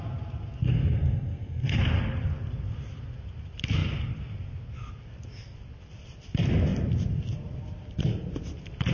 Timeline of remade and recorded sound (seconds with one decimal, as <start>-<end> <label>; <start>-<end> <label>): 0.0-0.7 recorded; 0.7-1.8 remade; 1.8-8.9 recorded